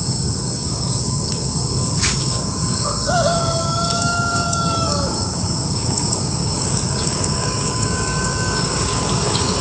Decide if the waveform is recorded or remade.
remade